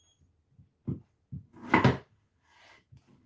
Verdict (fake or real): real